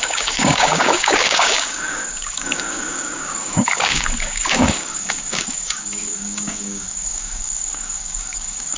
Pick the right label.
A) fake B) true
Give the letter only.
A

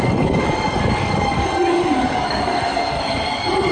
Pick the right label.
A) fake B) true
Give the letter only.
A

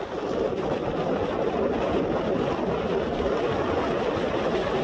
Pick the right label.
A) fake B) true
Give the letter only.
B